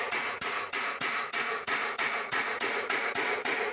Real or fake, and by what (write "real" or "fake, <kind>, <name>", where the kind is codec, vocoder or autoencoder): fake, vocoder, Vocos